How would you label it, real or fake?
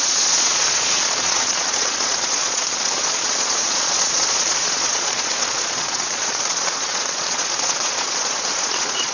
fake